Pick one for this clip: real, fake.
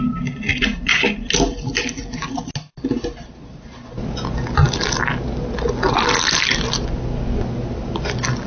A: real